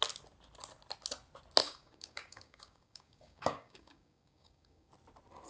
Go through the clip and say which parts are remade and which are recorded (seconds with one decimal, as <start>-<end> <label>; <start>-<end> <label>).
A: 0.0-1.6 recorded; 1.6-4.9 remade; 4.9-5.5 recorded